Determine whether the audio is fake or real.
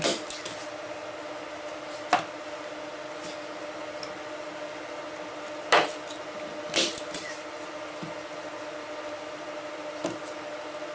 real